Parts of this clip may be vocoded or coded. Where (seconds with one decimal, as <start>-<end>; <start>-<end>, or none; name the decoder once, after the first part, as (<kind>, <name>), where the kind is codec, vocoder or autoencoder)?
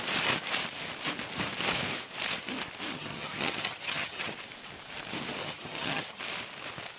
2.9-4.3 (vocoder, HiFi-GAN); 5.4-6.2